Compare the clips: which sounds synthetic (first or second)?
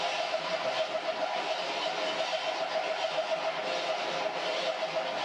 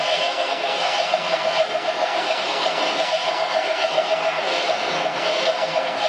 second